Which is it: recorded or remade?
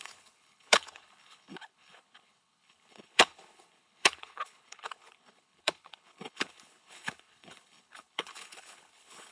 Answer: remade